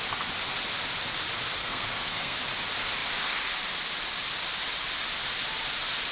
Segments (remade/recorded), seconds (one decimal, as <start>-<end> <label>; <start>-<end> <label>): 0.0-1.6 recorded; 1.6-2.4 remade; 2.4-6.1 recorded